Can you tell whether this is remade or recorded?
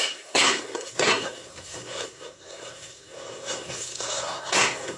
remade